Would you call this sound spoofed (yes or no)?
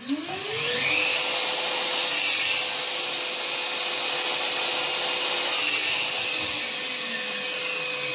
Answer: no